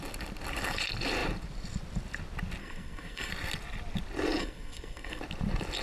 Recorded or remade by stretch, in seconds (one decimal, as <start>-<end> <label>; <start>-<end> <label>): 0.0-2.6 recorded; 2.6-3.3 remade; 3.3-4.4 recorded; 4.4-5.2 remade; 5.2-5.8 recorded